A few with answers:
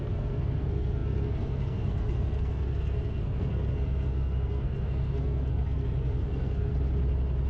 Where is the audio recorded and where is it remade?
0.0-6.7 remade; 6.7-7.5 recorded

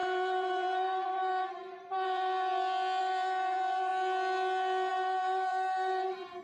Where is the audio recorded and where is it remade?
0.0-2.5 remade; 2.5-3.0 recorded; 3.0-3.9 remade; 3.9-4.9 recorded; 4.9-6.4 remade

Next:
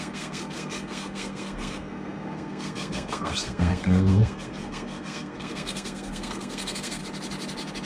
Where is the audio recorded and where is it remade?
0.0-7.0 remade; 7.0-7.9 recorded

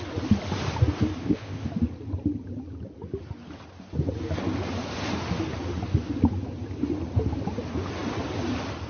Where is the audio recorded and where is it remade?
0.0-1.2 recorded; 1.2-1.7 remade; 1.7-8.9 recorded